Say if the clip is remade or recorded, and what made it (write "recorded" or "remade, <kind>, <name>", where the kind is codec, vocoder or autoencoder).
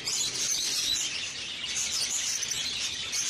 recorded